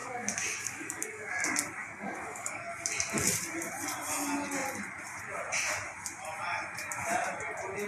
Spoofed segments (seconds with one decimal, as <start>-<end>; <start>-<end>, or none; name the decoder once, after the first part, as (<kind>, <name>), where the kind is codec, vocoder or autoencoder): 0.0-1.3 (codec, DAC); 1.8-2.6